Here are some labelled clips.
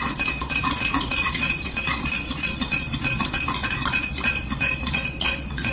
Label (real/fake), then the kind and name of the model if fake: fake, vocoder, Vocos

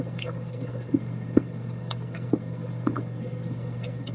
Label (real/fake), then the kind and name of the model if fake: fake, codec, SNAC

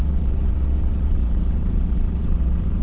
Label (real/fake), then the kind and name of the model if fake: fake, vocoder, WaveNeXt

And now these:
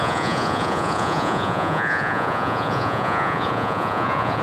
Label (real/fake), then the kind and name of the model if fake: fake, vocoder, Vocos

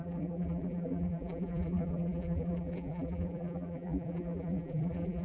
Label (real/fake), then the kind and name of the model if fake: fake, vocoder, BigVGAN v2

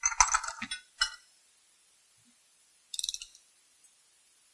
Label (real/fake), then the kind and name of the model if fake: real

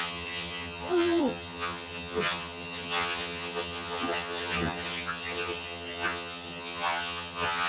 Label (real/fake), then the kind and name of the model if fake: fake, vocoder, HiFi-GAN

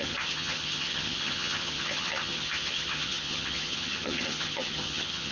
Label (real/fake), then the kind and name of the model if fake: fake, vocoder, HiFi-GAN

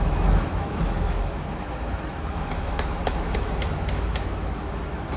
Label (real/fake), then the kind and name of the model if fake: fake, autoencoder, DAC-VAE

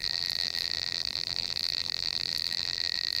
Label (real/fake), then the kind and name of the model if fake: fake, vocoder, BigVGAN v2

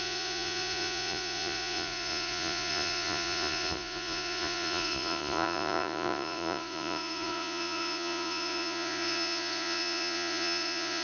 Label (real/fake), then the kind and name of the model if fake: fake, vocoder, Vocos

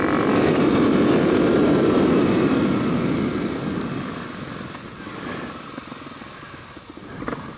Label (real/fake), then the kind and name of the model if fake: real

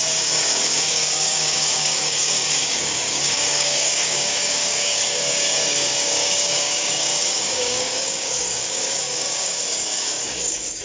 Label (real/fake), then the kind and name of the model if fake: fake, codec, DAC